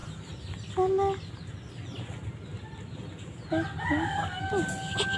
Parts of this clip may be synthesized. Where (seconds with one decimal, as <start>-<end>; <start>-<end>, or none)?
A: none